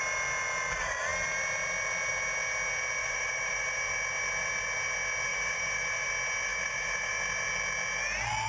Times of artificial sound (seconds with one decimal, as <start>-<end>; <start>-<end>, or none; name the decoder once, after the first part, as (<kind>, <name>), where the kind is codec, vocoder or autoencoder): 3.0-3.8 (vocoder, BigVGAN v2); 5.3-6.1; 6.5-7.1